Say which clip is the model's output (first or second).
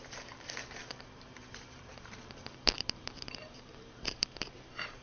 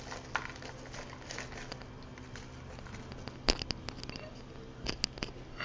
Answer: first